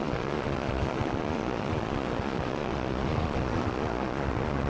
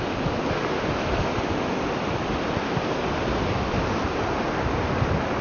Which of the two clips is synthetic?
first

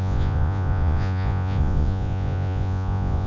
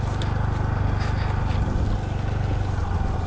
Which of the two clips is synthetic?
first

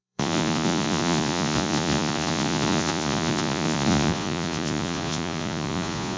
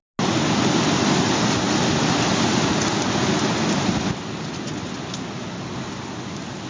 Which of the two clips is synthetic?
first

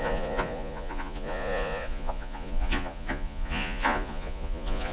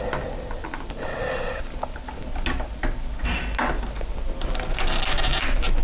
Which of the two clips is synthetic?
first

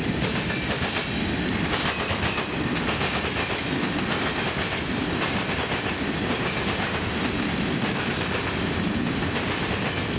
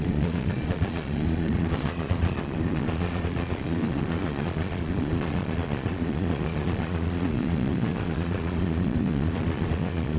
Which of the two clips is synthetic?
second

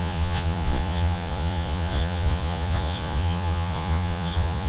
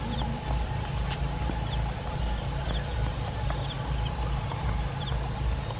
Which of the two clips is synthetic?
first